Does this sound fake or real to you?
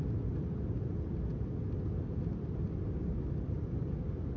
real